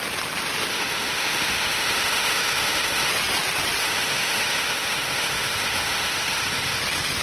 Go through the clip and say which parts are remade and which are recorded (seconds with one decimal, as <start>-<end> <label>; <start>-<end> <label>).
0.0-0.7 recorded; 0.7-3.1 remade; 3.1-3.8 recorded; 3.8-6.8 remade; 6.8-7.2 recorded